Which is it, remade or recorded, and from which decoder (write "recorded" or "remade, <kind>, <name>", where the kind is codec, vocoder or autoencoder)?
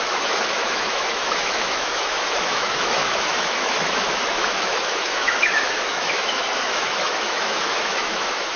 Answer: remade, autoencoder, DAC-VAE